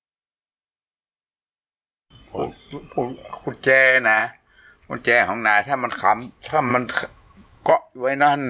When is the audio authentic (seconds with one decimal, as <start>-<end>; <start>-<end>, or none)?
0.0-6.7; 7.7-8.5